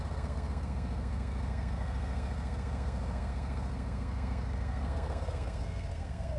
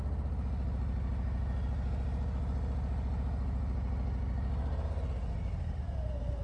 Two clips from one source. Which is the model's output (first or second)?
first